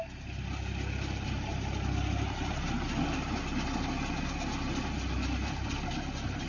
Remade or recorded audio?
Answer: recorded